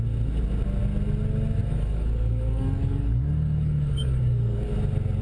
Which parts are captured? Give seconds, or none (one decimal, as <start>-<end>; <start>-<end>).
0.0-1.6; 4.7-5.2